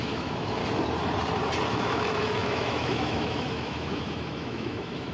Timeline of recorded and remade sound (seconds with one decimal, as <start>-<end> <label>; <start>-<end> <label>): 0.0-0.6 remade; 0.6-1.7 recorded; 1.7-5.1 remade